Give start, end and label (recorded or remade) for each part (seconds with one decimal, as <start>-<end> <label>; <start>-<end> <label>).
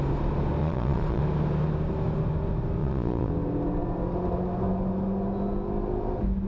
0.0-0.6 recorded; 0.6-1.2 remade; 1.2-2.8 recorded; 2.8-3.3 remade; 3.3-6.5 recorded